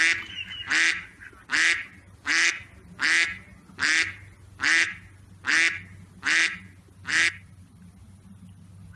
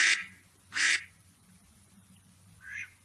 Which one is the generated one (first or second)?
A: second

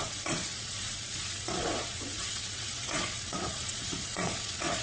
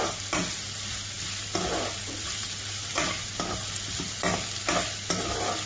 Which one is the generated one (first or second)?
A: first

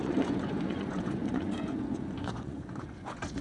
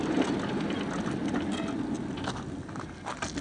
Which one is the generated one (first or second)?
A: first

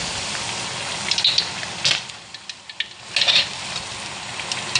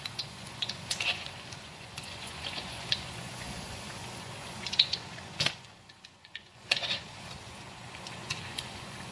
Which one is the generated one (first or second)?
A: second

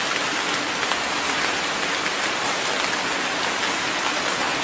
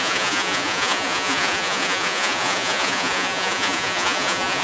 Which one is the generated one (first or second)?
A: second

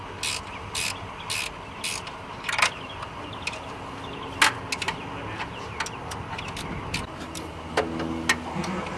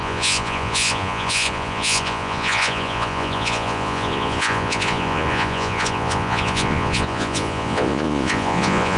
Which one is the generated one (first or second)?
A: second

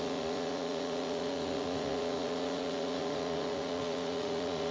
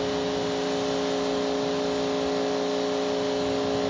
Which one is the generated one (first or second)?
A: first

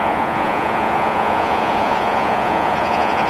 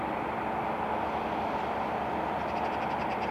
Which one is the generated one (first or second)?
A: first